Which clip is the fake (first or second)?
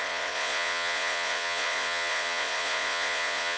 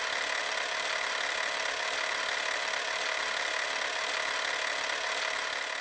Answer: first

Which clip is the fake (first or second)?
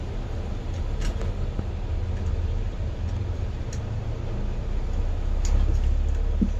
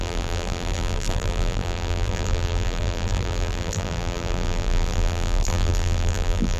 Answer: second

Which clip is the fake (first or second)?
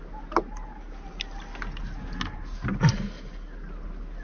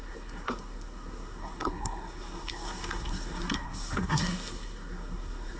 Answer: second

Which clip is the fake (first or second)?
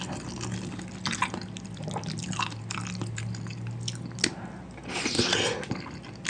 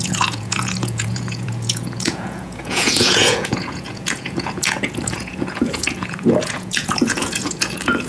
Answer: second